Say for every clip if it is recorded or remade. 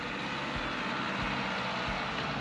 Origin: recorded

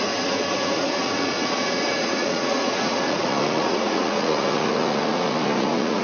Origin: remade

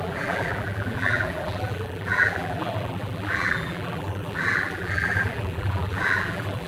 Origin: remade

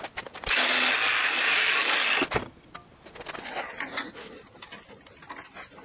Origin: recorded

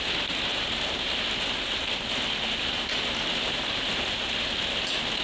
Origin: recorded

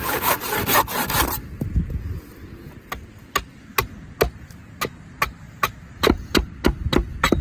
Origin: recorded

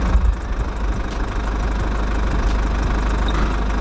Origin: recorded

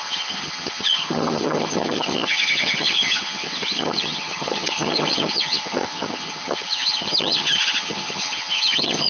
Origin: remade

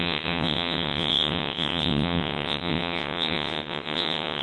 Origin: remade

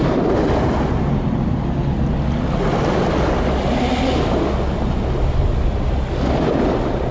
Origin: recorded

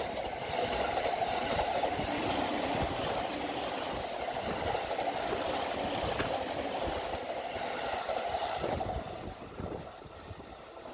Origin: recorded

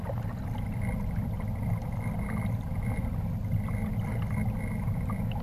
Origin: recorded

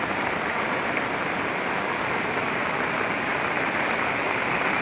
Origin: recorded